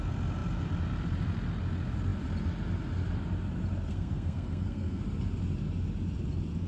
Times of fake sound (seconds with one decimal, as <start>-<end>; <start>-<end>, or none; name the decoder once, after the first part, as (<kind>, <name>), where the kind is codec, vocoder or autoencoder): 3.9-5.0 (codec, SNAC)

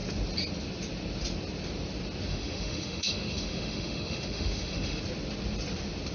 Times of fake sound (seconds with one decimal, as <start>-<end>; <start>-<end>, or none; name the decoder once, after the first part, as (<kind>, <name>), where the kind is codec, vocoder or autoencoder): 2.3-5.0 (autoencoder, DAC-VAE)

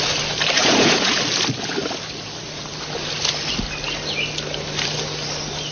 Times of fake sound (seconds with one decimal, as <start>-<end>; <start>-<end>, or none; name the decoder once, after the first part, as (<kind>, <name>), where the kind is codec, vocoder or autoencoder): 0.6-1.2 (vocoder, Vocos)

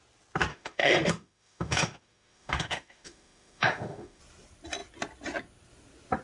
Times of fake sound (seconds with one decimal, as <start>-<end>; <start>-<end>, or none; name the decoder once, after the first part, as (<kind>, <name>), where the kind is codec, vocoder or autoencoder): 0.5-4.2 (autoencoder, DAC-VAE)

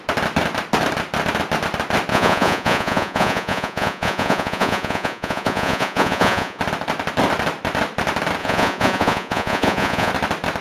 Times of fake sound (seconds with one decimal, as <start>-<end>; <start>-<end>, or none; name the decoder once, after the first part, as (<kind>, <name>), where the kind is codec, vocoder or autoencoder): 2.1-6.6 (vocoder, Vocos); 8.4-10.1

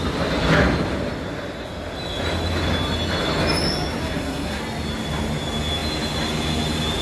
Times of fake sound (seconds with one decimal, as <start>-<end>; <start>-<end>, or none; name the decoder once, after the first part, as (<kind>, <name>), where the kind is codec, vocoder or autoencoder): 4.1-4.6 (codec, SNAC)

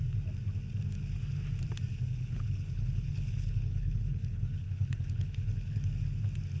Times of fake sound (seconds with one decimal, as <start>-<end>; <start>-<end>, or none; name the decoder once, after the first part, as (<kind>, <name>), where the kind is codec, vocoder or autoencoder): 1.9-5.8 (codec, HILCodec)